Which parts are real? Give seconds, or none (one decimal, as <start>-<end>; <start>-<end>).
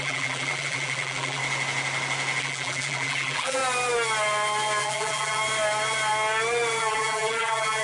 1.4-2.4; 3.6-4.8; 5.4-6.8